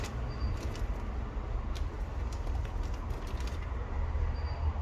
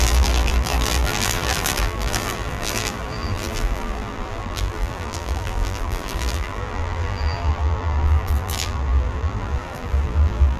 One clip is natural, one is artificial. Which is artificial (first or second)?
second